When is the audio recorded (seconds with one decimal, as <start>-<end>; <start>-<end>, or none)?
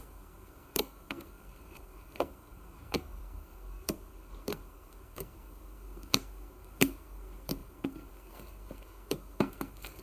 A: none